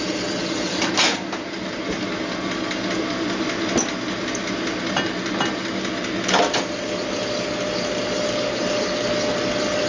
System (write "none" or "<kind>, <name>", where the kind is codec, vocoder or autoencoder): none